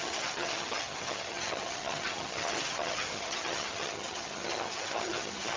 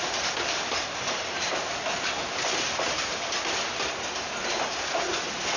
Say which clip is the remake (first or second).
first